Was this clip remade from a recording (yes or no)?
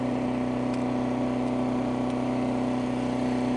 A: no